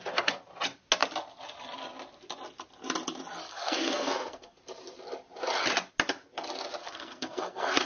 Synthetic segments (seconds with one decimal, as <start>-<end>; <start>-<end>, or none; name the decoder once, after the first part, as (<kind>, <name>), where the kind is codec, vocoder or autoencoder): 3.5-4.6 (codec, SNAC); 6.8-7.9